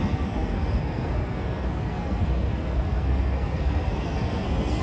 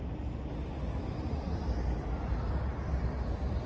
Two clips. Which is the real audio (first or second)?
second